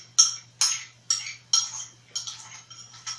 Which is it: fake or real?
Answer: real